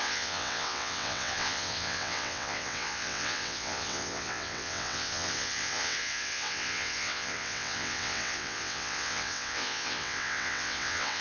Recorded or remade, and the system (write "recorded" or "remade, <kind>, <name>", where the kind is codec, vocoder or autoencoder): remade, vocoder, WaveNeXt